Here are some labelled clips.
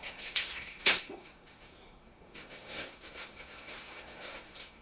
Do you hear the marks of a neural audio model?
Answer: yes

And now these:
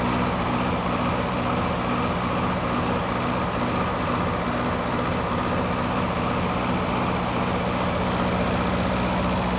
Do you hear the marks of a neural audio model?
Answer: no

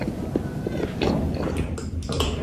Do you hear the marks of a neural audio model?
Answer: no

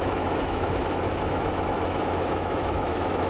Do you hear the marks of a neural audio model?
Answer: yes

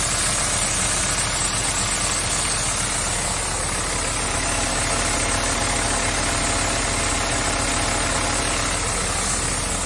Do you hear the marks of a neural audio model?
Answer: no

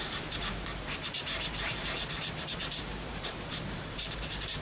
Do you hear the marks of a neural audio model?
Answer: yes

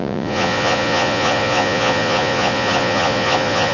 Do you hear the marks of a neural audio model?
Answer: yes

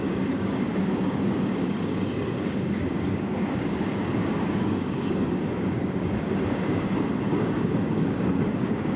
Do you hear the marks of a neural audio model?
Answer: yes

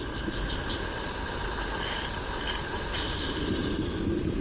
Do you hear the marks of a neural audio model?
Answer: no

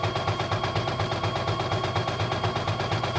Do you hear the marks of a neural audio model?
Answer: no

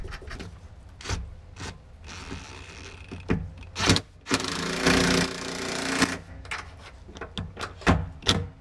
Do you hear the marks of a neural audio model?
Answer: no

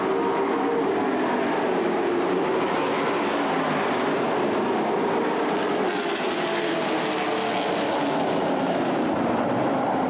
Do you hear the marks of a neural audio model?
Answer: no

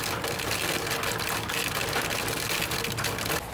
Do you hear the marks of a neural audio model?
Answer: no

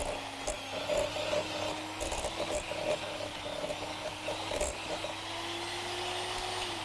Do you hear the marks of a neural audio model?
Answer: no